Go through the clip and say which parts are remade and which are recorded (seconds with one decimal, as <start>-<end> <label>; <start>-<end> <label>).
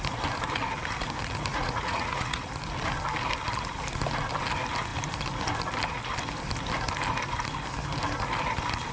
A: 0.0-1.5 recorded; 1.5-2.5 remade; 2.5-8.9 recorded